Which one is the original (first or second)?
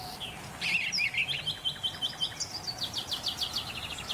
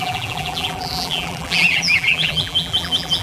first